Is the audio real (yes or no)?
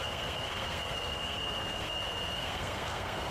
no